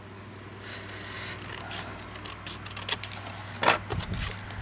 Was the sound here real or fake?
real